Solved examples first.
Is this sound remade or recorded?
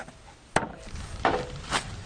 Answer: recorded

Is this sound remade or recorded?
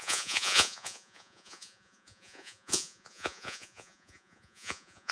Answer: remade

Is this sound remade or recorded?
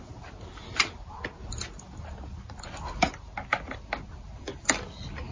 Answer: recorded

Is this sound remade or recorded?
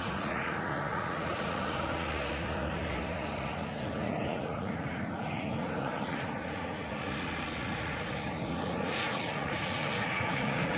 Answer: remade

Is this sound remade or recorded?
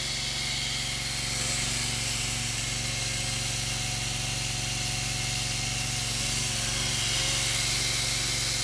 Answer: recorded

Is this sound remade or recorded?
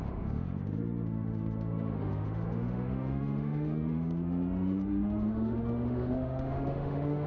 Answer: remade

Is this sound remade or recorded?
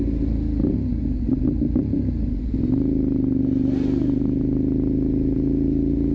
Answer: recorded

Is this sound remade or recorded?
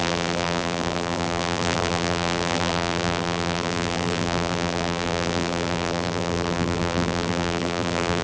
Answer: remade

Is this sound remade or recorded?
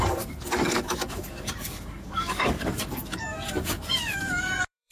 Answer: remade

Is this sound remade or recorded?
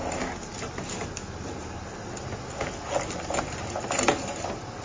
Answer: recorded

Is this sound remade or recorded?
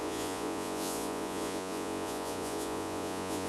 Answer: remade